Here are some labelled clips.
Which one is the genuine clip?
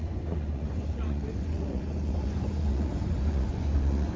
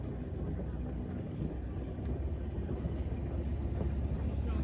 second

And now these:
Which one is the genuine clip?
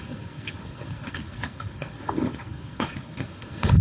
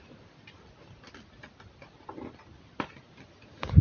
second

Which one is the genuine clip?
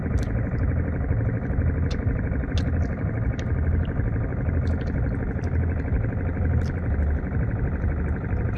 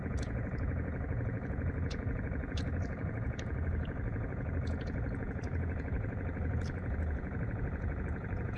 first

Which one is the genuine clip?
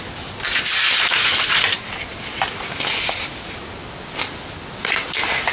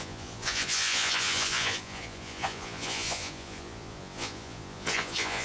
first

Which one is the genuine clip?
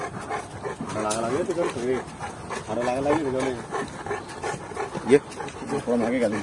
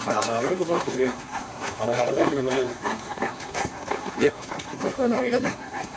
first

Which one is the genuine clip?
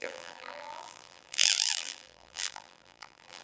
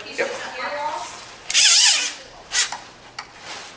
second